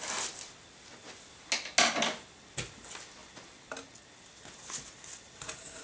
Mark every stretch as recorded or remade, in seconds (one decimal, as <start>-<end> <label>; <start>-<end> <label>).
0.0-5.8 recorded